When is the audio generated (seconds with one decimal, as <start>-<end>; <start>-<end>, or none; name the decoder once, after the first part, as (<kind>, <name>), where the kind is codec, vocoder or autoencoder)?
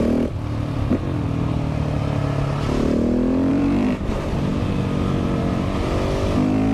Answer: 3.5-4.1 (vocoder, BigVGAN v2)